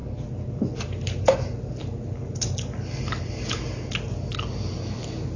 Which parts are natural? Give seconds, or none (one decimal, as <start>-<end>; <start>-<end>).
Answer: 0.0-5.4